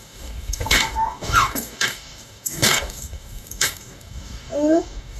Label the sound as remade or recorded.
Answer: remade